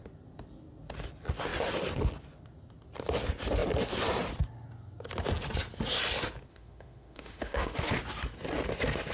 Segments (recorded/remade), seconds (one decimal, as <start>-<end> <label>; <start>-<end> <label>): 0.0-6.5 recorded; 6.5-8.0 remade; 8.0-9.1 recorded